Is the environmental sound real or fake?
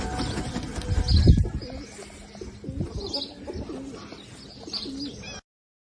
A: real